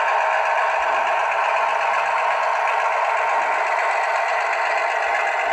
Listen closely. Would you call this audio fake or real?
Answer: real